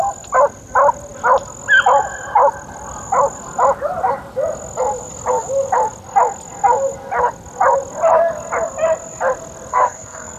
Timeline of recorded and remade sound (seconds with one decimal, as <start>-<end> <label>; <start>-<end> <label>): 0.0-9.7 recorded; 9.7-10.4 remade